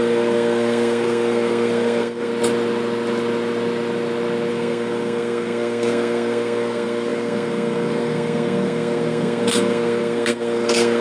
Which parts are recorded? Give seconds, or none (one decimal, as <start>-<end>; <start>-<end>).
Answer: 2.3-4.5